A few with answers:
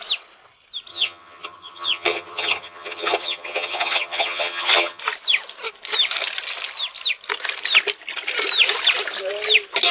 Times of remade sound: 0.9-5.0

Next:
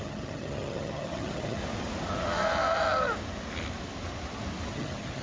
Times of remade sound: 0.0-1.6; 4.7-5.2

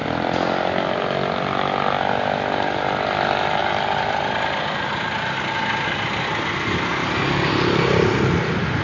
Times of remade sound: none

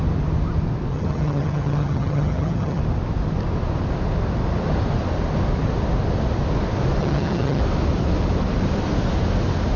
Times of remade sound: 0.9-2.8; 7.0-7.6

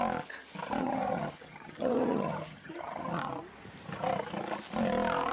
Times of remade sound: 0.8-3.3

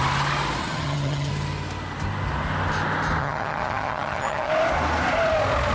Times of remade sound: 0.6-1.3; 3.2-4.5